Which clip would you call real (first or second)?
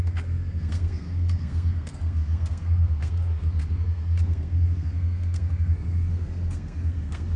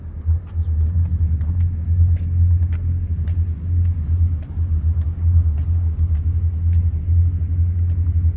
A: second